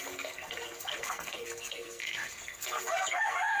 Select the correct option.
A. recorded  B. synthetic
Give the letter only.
B